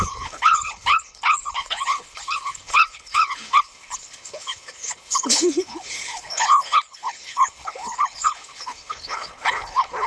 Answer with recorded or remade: remade